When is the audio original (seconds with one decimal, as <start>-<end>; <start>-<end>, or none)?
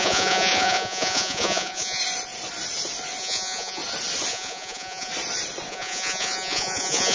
2.0-3.2; 3.8-4.3; 5.1-5.7